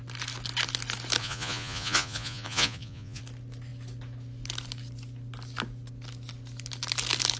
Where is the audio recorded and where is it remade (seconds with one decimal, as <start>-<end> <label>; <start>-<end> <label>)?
0.0-1.2 recorded; 1.2-3.2 remade; 3.2-7.4 recorded